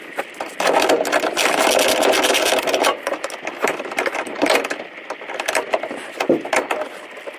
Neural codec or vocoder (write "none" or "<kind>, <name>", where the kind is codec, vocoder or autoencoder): none